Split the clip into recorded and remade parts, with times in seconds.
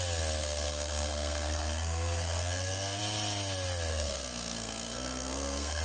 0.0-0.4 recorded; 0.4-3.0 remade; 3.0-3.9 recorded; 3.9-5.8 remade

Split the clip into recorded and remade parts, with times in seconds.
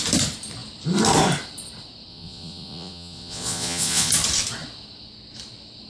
0.0-2.1 recorded; 2.1-4.1 remade; 4.1-5.9 recorded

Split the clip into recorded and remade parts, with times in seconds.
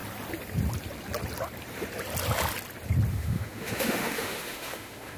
0.0-3.1 recorded; 3.1-5.2 remade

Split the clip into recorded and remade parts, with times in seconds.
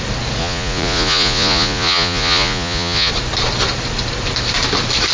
0.0-0.4 recorded; 0.4-3.1 remade; 3.1-5.1 recorded